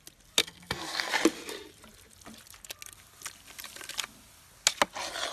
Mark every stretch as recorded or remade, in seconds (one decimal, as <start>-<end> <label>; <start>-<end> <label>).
0.0-0.4 recorded; 0.4-1.1 remade; 1.1-5.3 recorded